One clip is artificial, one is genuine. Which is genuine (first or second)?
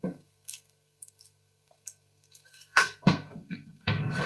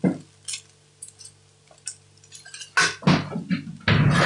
second